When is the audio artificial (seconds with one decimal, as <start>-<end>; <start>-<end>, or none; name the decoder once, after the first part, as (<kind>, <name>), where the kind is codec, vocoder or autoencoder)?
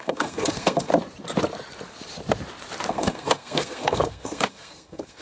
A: 0.0-0.9 (codec, SNAC); 2.9-5.2